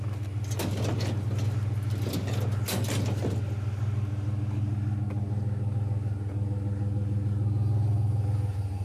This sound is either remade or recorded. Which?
recorded